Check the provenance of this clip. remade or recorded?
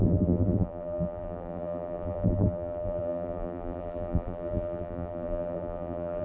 remade